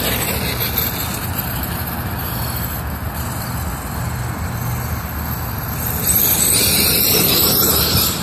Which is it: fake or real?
real